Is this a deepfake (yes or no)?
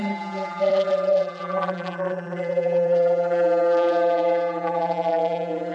yes